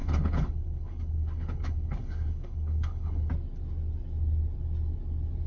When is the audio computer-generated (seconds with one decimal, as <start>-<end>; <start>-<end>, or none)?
0.0-3.3